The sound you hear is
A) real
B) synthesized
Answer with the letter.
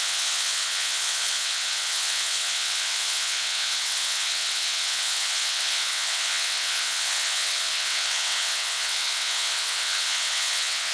B